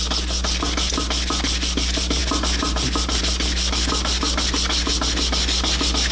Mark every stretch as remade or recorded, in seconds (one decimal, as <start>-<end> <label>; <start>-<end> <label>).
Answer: 0.0-6.1 recorded